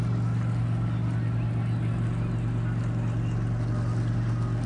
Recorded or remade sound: recorded